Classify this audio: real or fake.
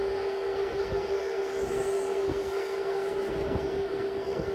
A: fake